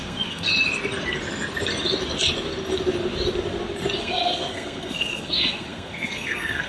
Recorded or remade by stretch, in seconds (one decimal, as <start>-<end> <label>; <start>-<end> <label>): 0.0-0.5 remade; 0.5-4.0 recorded; 4.0-6.7 remade